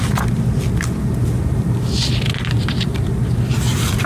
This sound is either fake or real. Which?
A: real